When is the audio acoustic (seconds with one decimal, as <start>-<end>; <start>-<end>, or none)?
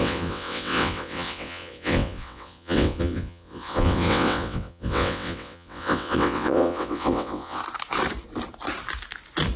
7.6-9.6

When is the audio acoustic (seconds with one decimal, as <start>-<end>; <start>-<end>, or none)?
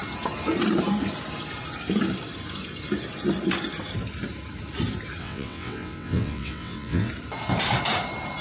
0.0-5.2; 7.1-8.4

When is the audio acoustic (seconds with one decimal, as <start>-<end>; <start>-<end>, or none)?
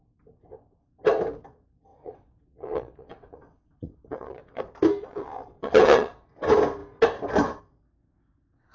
0.0-1.9; 4.6-5.0; 6.1-8.7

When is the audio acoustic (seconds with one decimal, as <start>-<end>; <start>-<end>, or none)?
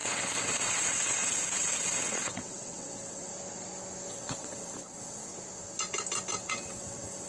3.3-4.1; 5.3-6.5